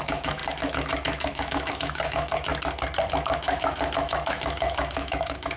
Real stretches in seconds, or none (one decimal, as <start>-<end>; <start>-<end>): 2.5-3.1